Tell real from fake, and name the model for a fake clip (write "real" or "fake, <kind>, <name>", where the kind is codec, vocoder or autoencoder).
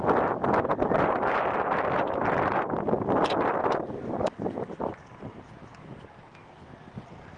real